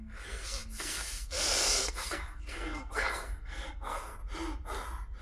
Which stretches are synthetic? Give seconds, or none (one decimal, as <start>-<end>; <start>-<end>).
0.0-4.2